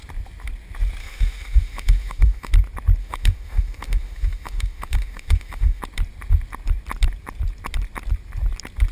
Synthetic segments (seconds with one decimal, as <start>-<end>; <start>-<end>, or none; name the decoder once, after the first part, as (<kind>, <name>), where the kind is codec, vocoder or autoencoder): 1.0-2.5 (autoencoder, DAC-VAE); 3.0-5.8